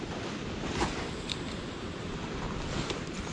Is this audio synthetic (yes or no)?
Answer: yes